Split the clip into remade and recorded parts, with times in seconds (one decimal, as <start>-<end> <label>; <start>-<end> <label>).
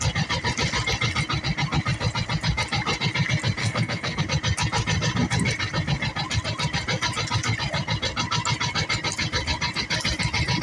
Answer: 0.0-3.6 recorded; 3.6-4.2 remade; 4.2-10.6 recorded